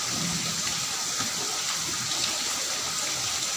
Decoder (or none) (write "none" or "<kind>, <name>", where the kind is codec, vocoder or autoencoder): none